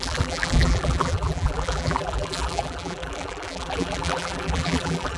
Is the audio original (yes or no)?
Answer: no